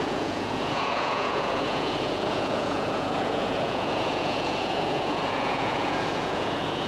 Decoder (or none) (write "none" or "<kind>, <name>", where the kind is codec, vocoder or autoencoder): vocoder, Vocos